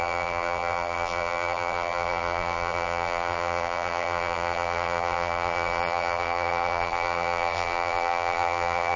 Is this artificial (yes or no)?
yes